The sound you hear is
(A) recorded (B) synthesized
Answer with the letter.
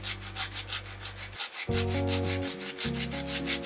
A